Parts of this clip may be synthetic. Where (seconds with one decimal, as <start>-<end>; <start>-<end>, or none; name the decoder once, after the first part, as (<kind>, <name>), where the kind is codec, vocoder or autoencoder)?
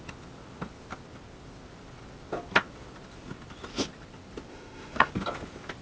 4.5-5.1 (autoencoder, DAC-VAE)